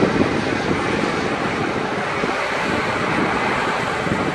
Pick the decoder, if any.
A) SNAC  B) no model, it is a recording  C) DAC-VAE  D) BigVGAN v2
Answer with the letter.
B